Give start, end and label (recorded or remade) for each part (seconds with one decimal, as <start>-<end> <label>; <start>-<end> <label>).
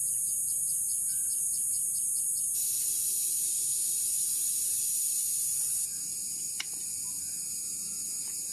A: 0.0-8.5 recorded